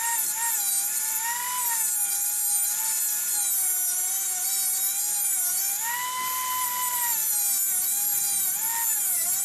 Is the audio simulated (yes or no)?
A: no